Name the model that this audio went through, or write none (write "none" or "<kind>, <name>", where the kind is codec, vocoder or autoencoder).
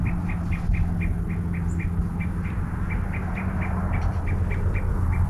none